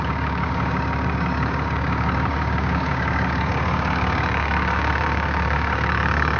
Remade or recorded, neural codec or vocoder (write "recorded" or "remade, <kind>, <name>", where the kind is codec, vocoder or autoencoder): remade, codec, DAC